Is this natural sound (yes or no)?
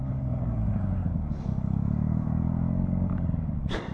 no